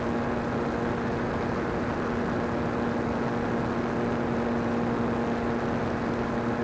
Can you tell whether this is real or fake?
real